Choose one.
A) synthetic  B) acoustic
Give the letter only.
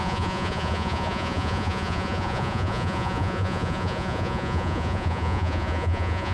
A